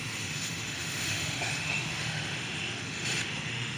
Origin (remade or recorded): remade